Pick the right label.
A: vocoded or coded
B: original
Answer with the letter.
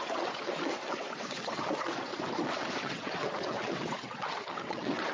A